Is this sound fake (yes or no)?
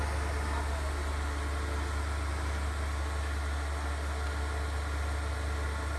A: no